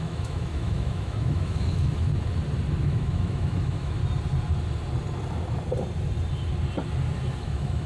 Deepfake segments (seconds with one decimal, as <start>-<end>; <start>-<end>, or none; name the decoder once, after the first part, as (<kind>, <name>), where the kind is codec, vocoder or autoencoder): 0.0-2.1 (autoencoder, DAC-VAE); 2.8-4.0; 7.4-7.9